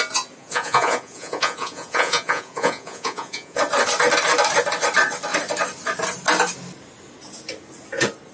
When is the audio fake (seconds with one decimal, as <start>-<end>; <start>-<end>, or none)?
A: 0.4-3.6